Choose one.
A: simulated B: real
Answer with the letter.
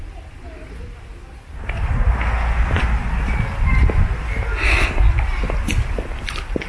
B